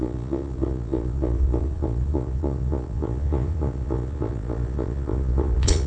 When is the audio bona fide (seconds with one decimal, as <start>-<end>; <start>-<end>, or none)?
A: none